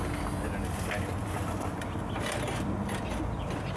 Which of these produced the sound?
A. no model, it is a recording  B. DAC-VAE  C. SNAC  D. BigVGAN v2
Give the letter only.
A